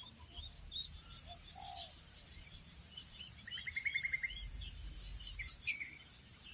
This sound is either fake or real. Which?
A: fake